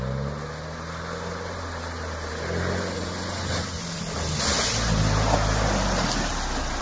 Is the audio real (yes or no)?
yes